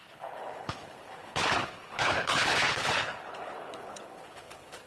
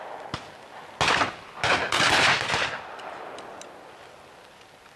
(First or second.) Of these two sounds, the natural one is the second